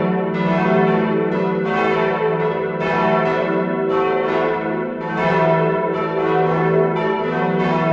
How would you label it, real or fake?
real